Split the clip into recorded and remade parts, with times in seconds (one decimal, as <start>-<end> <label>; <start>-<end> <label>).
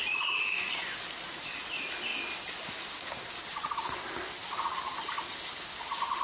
0.0-6.2 recorded